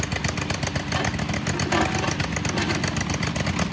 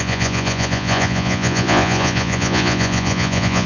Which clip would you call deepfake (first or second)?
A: second